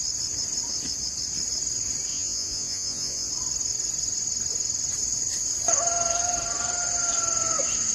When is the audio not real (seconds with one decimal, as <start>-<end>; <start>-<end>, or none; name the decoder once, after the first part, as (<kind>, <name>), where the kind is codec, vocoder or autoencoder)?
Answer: 2.1-3.3 (vocoder, Vocos)

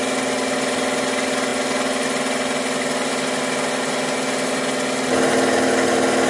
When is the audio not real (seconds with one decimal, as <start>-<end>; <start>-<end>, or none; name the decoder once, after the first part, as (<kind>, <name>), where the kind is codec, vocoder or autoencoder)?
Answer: none

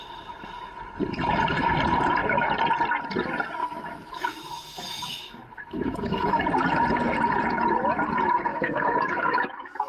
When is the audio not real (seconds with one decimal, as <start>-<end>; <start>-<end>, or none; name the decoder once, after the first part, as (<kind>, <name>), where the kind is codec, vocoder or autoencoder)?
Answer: 3.6-6.4 (autoencoder, DAC-VAE); 8.5-9.9

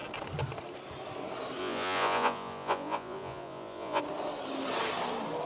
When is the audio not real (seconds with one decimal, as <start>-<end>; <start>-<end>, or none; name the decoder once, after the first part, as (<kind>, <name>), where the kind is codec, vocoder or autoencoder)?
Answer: 1.6-4.0 (vocoder, Vocos)

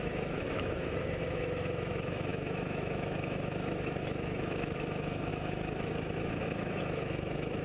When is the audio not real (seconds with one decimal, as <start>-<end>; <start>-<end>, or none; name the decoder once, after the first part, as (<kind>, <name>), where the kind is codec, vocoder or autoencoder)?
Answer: 0.0-7.6 (autoencoder, DAC-VAE)

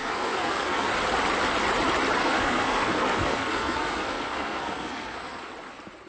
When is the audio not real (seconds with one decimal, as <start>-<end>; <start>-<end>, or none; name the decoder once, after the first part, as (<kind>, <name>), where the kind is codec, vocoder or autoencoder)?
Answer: 0.0-0.9 (codec, SNAC); 2.2-5.5

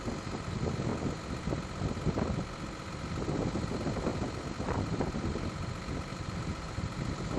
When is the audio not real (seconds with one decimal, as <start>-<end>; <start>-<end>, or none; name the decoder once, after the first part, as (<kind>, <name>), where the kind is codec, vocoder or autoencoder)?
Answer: 6.1-6.8 (vocoder, BigVGAN v2)

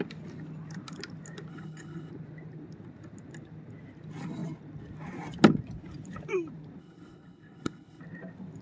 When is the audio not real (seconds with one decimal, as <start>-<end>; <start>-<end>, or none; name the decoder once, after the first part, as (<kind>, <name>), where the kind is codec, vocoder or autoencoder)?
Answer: 1.5-2.1 (codec, HILCodec); 6.8-8.0